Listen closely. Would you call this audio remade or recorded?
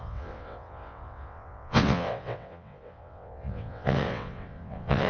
remade